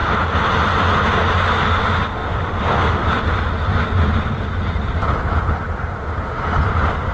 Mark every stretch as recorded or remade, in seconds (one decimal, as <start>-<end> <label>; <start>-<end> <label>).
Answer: 0.0-7.1 recorded

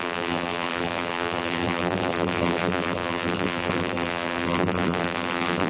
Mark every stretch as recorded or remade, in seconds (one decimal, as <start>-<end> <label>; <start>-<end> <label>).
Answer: 0.0-5.7 remade

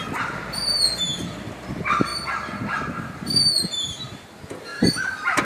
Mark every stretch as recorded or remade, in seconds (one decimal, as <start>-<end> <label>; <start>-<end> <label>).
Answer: 0.0-2.1 recorded; 2.1-3.1 remade; 3.1-5.4 recorded

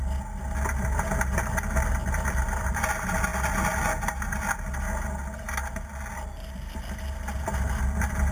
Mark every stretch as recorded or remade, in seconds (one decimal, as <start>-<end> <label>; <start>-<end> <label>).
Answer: 0.0-8.3 recorded

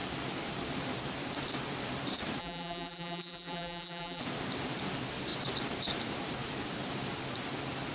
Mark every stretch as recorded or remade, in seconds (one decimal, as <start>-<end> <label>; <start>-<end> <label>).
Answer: 0.0-2.4 recorded; 2.4-4.2 remade; 4.2-7.9 recorded

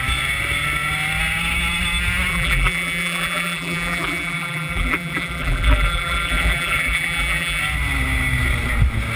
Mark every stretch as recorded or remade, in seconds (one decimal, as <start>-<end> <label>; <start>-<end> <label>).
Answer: 0.0-2.3 recorded; 2.3-7.6 remade; 7.6-9.2 recorded

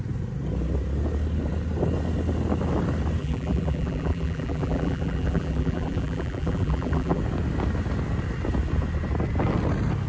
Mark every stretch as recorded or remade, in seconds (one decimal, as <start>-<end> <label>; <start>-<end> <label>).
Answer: 0.0-3.2 recorded; 3.2-7.2 remade; 7.2-10.1 recorded

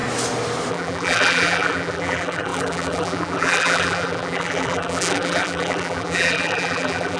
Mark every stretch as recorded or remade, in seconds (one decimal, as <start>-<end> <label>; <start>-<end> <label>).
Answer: 0.0-0.7 recorded; 0.7-7.2 remade